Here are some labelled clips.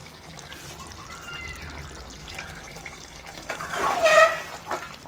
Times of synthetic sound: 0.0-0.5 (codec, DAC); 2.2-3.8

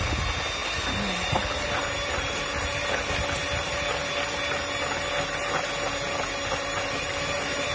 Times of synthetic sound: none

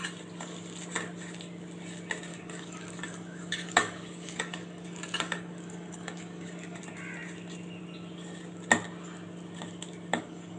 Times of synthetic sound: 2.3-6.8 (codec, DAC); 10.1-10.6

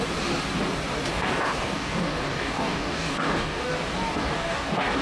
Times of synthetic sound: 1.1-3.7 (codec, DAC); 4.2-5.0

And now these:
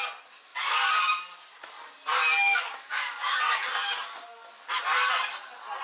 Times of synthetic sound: 2.4-3.4 (codec, DAC)

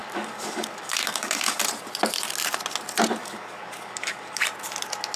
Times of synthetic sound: 0.0-1.6 (codec, DAC); 3.2-4.4

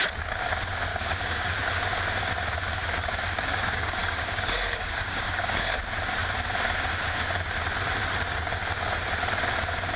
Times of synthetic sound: 0.9-1.5 (codec, DAC); 2.8-5.8